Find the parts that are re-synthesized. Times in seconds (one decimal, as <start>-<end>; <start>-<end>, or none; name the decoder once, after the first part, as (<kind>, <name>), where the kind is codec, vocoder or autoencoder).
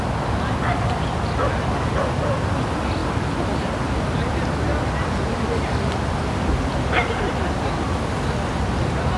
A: none